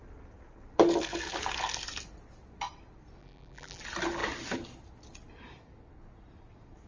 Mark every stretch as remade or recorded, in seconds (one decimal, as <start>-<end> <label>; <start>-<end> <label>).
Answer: 0.0-3.2 recorded; 3.2-3.8 remade; 3.8-6.9 recorded